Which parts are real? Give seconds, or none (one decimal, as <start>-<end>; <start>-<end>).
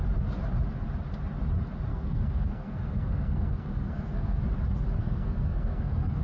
0.0-1.9; 4.4-5.0